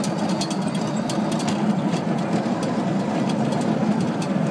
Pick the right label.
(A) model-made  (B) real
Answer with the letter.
B